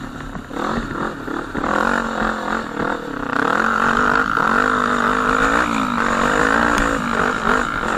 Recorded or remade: recorded